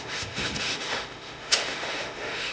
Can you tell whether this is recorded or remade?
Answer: remade